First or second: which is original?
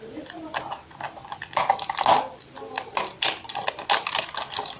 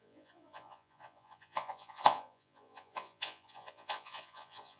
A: first